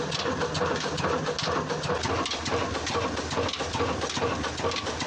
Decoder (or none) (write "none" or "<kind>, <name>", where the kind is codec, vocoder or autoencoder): none